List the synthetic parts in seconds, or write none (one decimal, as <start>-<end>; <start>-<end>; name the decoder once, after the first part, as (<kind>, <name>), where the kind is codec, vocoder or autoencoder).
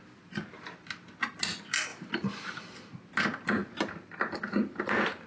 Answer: 1.9-2.6 (vocoder, BigVGAN v2)